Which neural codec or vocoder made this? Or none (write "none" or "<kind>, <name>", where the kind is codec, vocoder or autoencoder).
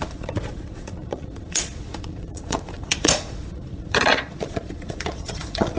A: vocoder, Vocos